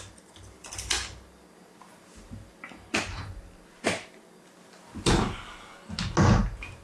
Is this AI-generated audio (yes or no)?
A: no